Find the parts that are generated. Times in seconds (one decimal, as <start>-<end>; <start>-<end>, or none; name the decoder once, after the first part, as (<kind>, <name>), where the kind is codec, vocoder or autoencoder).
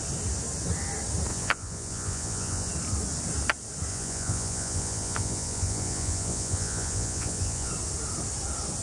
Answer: 1.3-2.7 (vocoder, Vocos); 3.9-7.7